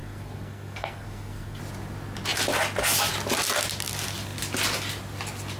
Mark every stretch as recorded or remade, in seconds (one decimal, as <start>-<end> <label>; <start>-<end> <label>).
0.0-1.6 remade; 1.6-5.6 recorded